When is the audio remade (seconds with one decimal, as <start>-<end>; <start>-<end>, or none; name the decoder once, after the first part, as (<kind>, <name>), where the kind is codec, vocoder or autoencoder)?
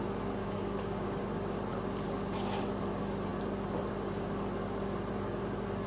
0.4-1.2 (codec, DAC)